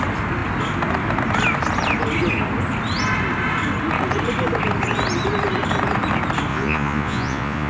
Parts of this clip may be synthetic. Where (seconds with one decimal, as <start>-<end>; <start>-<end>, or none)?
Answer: 6.5-7.7